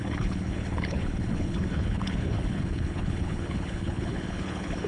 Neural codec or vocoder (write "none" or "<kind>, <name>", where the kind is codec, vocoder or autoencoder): codec, HILCodec